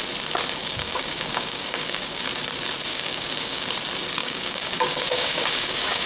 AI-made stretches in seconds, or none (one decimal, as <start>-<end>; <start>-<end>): 0.6-2.2; 2.9-3.7; 4.2-6.1